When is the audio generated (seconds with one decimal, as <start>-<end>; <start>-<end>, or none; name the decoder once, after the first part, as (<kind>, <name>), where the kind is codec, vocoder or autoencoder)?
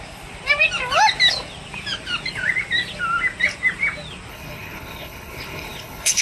4.3-6.2 (codec, HILCodec)